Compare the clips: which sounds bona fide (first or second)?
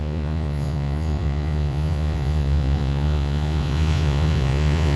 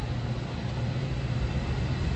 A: second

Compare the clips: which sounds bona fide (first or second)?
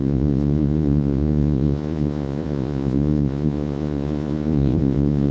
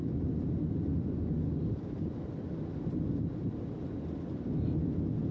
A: second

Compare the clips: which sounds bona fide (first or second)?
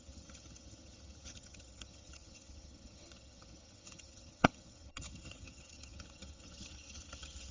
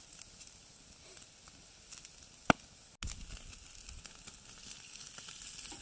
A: second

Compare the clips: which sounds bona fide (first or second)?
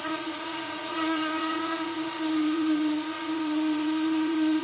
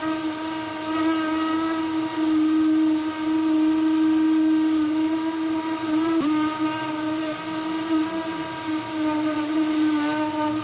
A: second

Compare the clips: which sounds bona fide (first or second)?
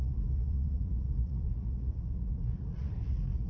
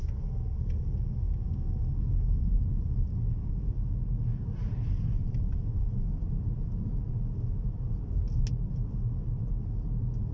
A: second